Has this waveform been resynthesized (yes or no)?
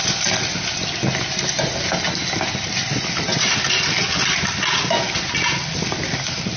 no